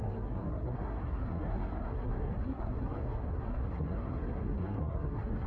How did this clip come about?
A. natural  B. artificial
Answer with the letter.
B